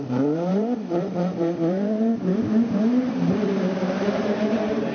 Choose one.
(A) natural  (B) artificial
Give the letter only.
B